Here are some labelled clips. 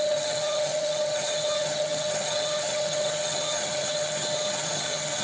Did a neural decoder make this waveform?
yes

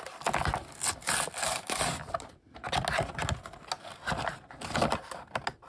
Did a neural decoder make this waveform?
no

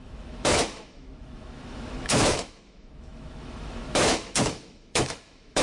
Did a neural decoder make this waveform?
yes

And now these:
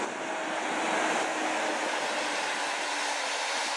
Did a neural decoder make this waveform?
no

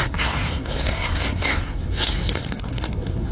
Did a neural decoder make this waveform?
yes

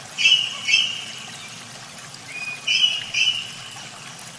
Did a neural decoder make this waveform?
no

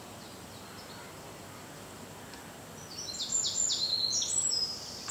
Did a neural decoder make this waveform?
no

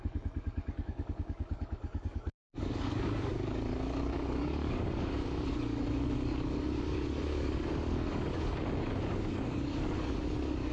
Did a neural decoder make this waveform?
yes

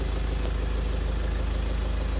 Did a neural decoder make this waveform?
no